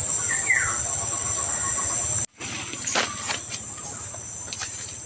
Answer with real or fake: real